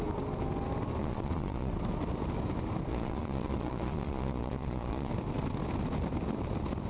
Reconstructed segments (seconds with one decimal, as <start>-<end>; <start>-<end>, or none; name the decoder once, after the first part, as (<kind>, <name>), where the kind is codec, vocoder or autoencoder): 1.0-1.7 (vocoder, Vocos); 2.9-5.1